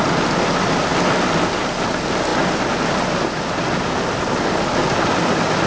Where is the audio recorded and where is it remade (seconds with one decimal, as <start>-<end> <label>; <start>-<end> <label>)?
0.0-5.7 recorded